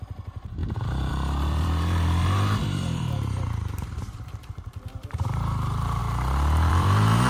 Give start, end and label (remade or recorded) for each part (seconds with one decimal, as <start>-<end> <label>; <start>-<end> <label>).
0.0-6.0 remade; 6.0-6.7 recorded; 6.7-7.3 remade